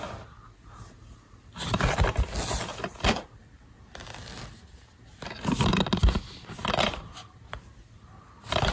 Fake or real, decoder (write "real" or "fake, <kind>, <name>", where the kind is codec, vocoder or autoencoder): real